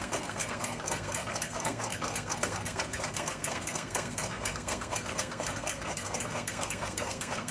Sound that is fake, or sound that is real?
fake